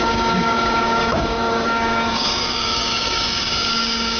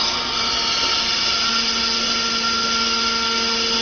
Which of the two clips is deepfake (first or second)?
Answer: first